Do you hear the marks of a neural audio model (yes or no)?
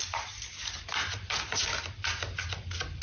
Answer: no